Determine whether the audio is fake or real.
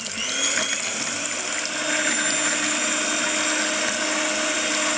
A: real